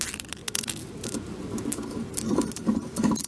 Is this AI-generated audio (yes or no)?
no